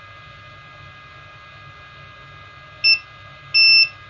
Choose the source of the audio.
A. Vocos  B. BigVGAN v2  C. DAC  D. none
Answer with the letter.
D